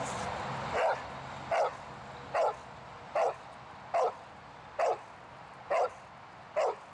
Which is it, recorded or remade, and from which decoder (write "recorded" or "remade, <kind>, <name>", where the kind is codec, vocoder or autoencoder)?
recorded